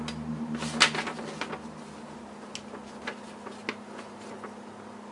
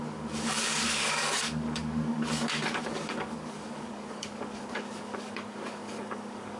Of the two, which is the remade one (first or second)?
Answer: second